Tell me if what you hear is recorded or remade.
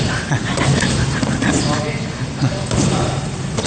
recorded